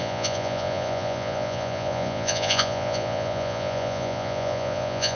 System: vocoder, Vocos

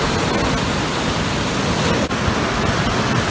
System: none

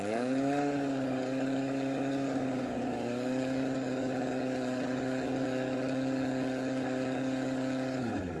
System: codec, DAC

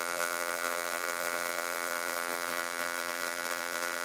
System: vocoder, BigVGAN v2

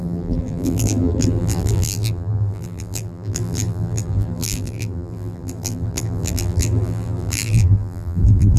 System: vocoder, BigVGAN v2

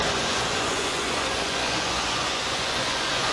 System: vocoder, Vocos